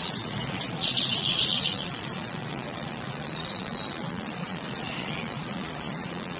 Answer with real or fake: fake